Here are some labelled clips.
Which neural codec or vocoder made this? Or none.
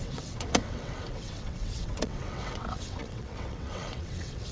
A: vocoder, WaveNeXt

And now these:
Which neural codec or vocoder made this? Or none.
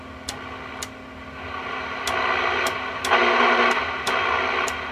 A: none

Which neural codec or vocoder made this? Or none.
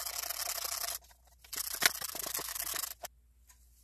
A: none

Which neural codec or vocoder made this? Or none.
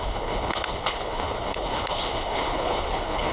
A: codec, HILCodec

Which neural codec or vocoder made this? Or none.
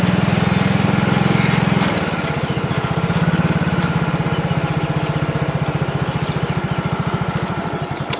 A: none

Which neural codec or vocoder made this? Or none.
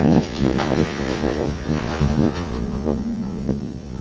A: vocoder, Vocos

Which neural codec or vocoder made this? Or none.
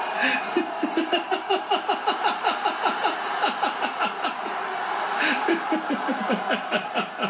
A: vocoder, BigVGAN v2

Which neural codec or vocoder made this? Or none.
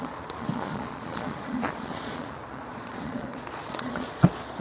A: vocoder, Vocos